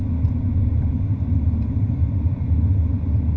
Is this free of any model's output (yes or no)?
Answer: yes